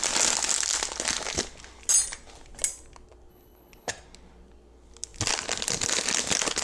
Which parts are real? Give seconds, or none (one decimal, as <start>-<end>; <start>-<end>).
0.0-3.3; 3.9-6.6